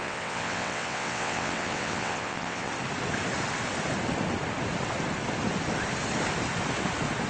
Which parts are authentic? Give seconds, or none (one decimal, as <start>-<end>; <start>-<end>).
2.7-7.3

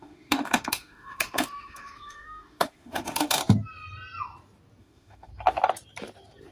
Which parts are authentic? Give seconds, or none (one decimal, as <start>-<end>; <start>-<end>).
3.4-4.8; 5.3-6.5

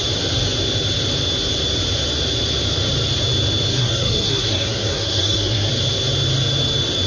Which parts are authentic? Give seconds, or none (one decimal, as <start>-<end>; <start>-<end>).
0.0-3.7; 5.7-7.1

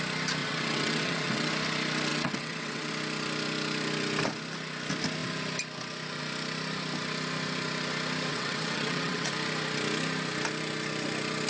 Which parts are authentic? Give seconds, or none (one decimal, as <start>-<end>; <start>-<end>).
0.0-0.4; 1.5-2.1; 2.9-8.3; 9.3-11.5

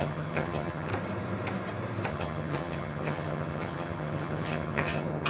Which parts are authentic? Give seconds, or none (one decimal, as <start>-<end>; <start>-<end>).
0.9-2.1

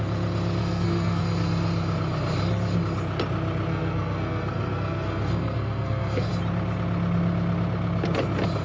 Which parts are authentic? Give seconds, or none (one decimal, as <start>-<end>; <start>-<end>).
0.0-0.6; 1.2-3.7; 6.3-8.6

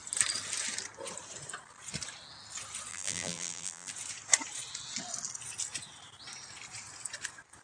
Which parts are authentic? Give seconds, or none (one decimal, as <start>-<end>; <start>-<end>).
0.0-2.9; 3.9-7.6

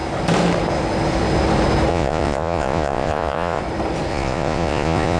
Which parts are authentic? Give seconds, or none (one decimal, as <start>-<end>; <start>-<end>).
0.0-1.9; 3.6-4.1